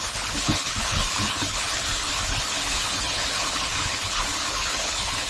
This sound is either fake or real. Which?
fake